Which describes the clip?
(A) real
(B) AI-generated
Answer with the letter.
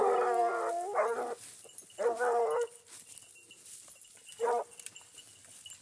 A